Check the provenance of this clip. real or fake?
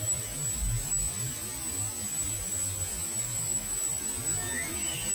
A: real